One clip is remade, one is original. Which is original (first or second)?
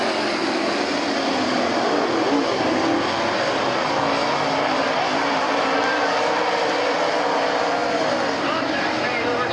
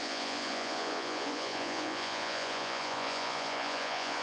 first